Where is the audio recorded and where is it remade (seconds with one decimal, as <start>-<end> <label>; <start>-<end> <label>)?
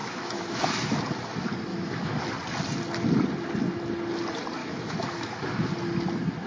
0.0-0.6 remade; 0.6-1.7 recorded; 1.7-2.2 remade; 2.2-4.6 recorded; 4.6-5.7 remade; 5.7-6.5 recorded